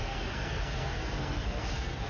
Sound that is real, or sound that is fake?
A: fake